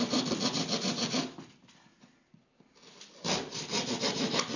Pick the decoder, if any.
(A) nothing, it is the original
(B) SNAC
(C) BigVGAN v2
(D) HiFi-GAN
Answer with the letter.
A